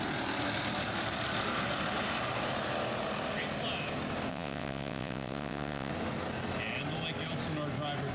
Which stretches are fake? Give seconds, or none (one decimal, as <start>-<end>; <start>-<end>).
4.3-5.9